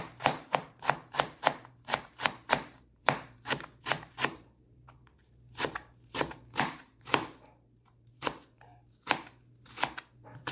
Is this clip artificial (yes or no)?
yes